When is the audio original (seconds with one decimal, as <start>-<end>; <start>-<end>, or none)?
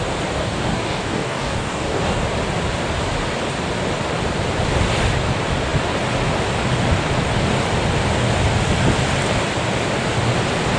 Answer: 0.0-0.4; 2.2-10.8